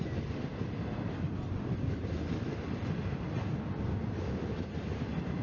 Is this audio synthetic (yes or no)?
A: no